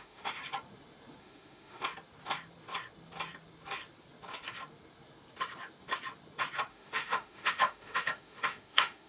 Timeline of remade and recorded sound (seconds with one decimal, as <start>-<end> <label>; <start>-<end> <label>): 0.0-0.4 remade; 0.4-1.2 recorded; 1.2-1.8 remade; 1.8-6.7 recorded; 6.7-9.1 remade